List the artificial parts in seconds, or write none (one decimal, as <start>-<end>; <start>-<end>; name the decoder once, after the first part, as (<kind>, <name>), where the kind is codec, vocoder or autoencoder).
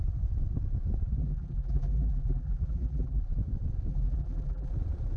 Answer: 1.2-3.2 (vocoder, BigVGAN v2); 3.9-4.7